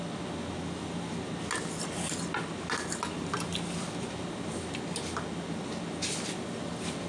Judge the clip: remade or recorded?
recorded